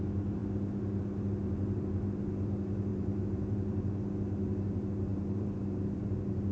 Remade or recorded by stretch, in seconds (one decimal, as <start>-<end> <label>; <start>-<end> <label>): 0.0-2.9 recorded; 2.9-3.9 remade; 3.9-5.1 recorded; 5.1-6.1 remade; 6.1-6.5 recorded